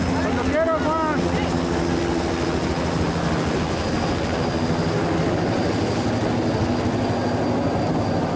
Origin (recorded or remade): recorded